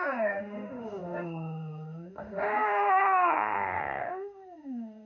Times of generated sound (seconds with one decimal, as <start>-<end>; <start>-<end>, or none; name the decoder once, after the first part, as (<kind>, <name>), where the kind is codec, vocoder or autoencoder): 0.0-5.1 (autoencoder, DAC-VAE)